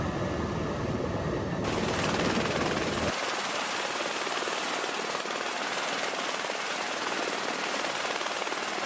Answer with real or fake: real